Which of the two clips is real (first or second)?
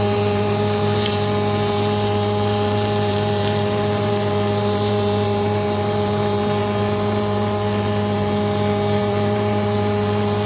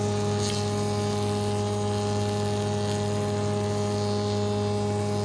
second